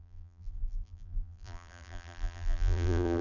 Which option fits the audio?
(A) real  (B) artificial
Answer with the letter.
B